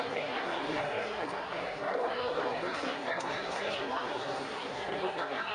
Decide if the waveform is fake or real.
fake